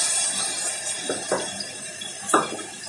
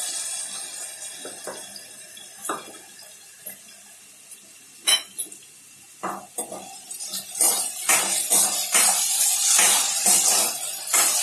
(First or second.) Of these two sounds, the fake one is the first